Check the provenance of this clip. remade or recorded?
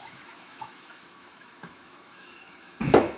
remade